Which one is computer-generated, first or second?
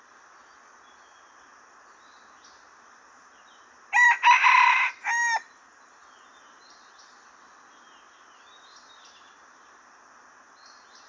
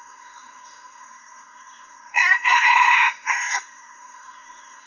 second